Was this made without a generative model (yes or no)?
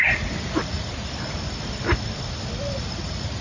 yes